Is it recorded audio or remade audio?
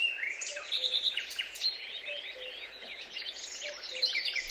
remade